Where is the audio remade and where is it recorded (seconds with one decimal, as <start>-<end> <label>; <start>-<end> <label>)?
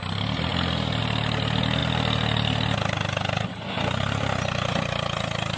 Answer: 0.0-5.6 recorded